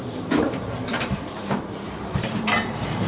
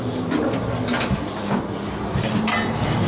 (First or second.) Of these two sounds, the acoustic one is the second